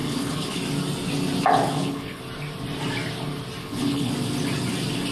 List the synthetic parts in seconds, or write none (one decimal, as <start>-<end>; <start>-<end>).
0.0-0.6; 1.7-2.2; 3.6-4.1